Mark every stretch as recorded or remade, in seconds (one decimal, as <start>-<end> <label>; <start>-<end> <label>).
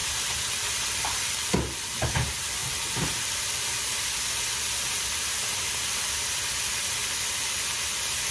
0.0-8.3 recorded